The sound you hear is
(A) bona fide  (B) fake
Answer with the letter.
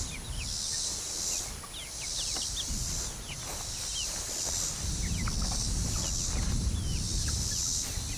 A